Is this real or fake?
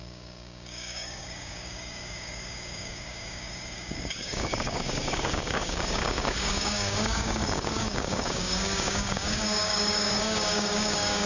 fake